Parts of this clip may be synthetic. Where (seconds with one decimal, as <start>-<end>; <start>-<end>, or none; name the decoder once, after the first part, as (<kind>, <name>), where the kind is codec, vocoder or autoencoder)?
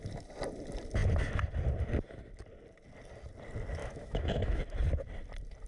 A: 3.8-4.6 (autoencoder, DAC-VAE)